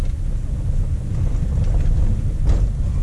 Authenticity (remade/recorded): recorded